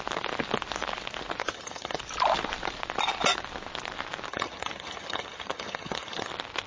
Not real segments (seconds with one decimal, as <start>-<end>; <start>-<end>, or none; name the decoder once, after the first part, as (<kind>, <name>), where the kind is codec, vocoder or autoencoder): 1.4-2.0 (vocoder, HiFi-GAN); 4.3-6.3